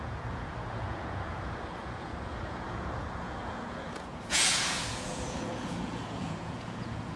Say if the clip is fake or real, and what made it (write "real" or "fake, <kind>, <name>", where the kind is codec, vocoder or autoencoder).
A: fake, vocoder, Vocos